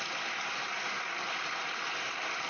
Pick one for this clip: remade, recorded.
recorded